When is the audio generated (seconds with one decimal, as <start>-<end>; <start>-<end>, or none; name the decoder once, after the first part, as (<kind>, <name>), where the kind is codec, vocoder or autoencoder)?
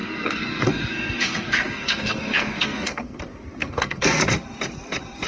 0.0-3.2 (codec, SNAC); 3.6-4.2